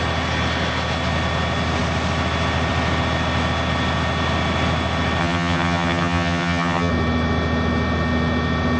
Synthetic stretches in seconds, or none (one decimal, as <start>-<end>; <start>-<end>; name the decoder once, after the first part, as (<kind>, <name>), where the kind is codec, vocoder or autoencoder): 5.2-6.9 (vocoder, HiFi-GAN)